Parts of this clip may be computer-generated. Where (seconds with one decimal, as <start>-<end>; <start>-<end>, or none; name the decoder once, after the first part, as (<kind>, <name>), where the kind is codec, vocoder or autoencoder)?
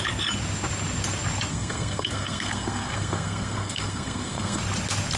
1.5-4.6 (codec, SNAC)